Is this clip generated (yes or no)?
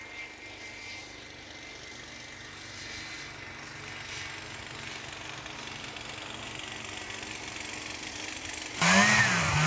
no